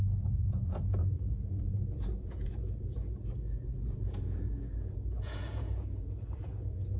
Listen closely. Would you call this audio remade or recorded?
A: remade